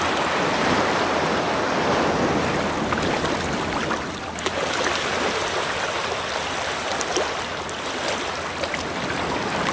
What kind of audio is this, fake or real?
real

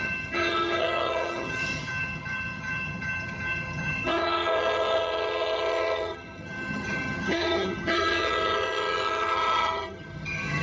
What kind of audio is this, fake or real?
fake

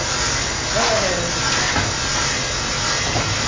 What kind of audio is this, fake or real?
real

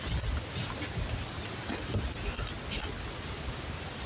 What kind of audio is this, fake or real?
real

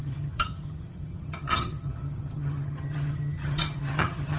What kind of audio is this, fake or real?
fake